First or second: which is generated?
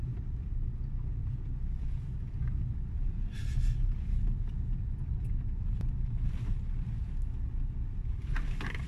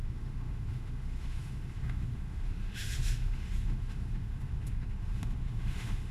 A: second